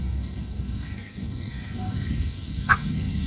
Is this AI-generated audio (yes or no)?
yes